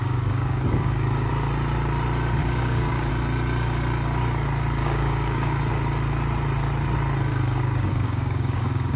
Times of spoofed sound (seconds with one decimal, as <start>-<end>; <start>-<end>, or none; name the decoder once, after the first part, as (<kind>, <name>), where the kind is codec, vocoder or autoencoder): 0.0-1.3 (codec, DAC); 2.4-3.1; 4.8-5.6; 7.3-9.0